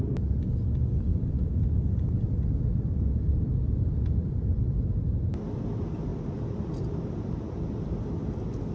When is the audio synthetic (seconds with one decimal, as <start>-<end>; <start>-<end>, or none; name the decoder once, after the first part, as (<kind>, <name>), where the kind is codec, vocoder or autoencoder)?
1.1-1.9 (vocoder, BigVGAN v2); 4.2-5.0; 6.1-6.9